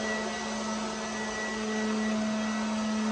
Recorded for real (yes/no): yes